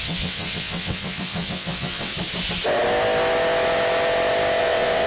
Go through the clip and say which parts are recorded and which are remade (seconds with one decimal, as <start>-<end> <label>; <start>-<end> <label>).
0.0-2.1 remade; 2.1-4.6 recorded; 4.6-5.1 remade